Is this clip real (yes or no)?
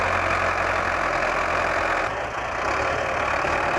yes